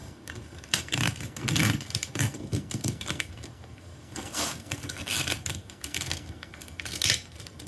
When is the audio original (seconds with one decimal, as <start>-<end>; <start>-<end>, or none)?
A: none